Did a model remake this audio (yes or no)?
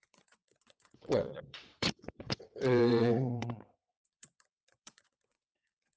yes